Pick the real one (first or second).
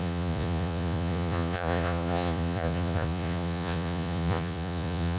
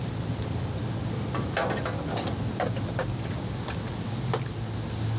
second